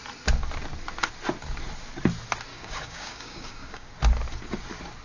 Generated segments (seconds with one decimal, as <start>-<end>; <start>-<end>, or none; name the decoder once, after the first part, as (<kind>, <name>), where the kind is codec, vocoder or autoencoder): 2.5-3.9 (codec, DAC)